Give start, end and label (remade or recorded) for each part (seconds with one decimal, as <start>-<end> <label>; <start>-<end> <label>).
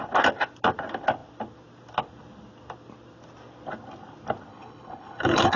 0.0-4.5 recorded; 4.5-5.6 remade